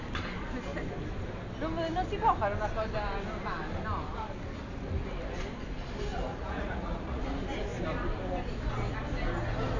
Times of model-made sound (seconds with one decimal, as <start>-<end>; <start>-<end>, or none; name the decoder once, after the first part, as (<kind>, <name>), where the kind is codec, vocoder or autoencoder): 6.1-7.2 (vocoder, Vocos)